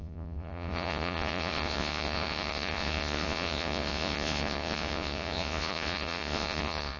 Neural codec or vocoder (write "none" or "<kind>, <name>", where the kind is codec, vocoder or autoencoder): vocoder, Vocos